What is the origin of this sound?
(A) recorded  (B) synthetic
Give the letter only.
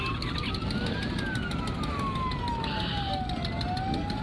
A